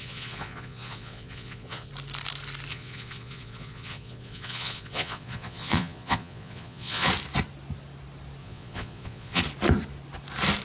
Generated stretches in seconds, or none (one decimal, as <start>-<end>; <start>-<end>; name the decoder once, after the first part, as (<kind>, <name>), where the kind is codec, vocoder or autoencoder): 0.0-1.9 (vocoder, Vocos); 2.7-7.1; 8.4-9.4